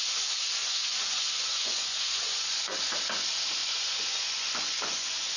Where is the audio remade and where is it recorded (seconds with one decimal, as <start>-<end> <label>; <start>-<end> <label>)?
0.0-0.6 recorded; 0.6-2.9 remade; 2.9-3.6 recorded; 3.6-5.4 remade